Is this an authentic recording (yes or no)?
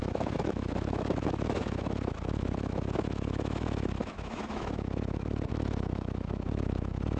no